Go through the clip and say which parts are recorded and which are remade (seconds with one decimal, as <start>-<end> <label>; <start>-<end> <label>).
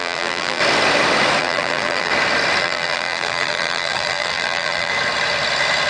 0.0-0.6 remade; 0.6-1.4 recorded; 1.4-2.1 remade; 2.1-2.6 recorded; 2.6-4.9 remade; 4.9-5.9 recorded